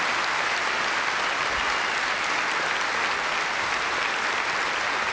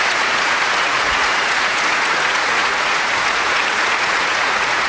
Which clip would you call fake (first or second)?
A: second